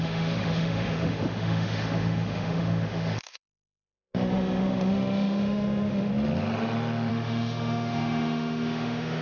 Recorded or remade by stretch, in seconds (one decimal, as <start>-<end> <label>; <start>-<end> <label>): 0.0-6.1 remade; 6.1-7.1 recorded; 7.1-9.2 remade